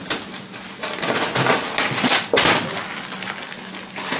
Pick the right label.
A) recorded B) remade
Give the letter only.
A